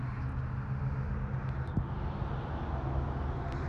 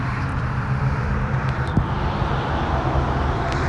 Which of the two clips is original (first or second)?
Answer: first